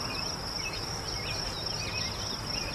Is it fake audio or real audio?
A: real